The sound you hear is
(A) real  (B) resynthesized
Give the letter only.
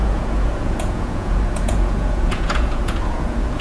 B